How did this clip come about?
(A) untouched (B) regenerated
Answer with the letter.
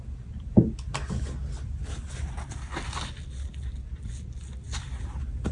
A